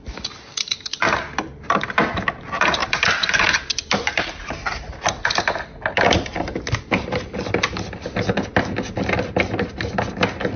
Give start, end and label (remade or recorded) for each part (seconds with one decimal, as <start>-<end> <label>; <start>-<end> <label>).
0.0-10.6 recorded